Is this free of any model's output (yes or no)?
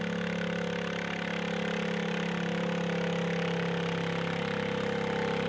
yes